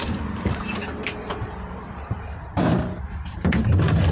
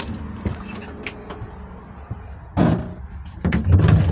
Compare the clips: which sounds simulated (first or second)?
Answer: first